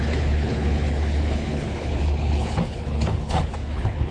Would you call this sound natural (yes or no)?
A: no